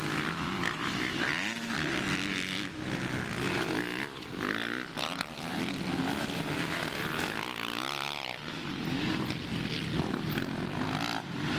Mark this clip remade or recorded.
recorded